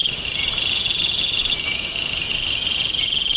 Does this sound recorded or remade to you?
recorded